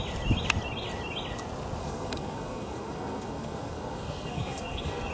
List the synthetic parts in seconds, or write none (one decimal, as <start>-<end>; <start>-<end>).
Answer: 1.8-5.1